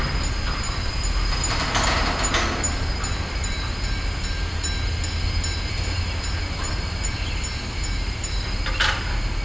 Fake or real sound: real